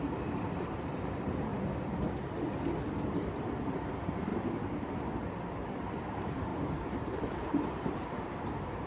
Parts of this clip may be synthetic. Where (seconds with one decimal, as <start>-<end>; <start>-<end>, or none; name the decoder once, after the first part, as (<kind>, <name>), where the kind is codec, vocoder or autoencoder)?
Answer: 0.0-1.5 (vocoder, BigVGAN v2); 3.6-4.3; 5.4-8.9